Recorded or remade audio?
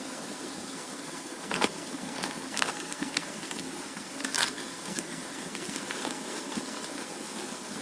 remade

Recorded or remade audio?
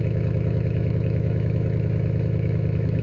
remade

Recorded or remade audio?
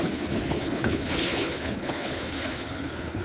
remade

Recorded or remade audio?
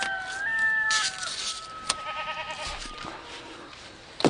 recorded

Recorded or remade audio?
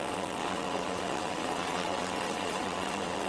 remade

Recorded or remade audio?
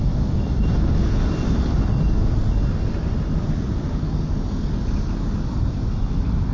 recorded